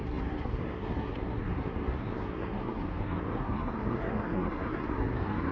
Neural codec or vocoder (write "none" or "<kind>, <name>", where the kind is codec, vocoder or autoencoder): codec, SNAC